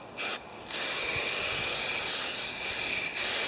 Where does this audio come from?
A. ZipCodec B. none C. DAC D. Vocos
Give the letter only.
B